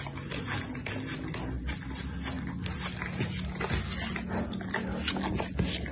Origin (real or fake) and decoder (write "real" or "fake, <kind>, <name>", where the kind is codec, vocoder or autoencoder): real